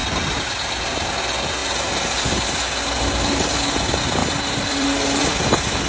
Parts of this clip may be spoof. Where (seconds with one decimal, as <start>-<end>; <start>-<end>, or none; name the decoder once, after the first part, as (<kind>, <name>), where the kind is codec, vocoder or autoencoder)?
0.0-0.7 (vocoder, BigVGAN v2); 4.2-5.2